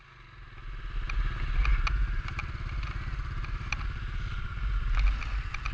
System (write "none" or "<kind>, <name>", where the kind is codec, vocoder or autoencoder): none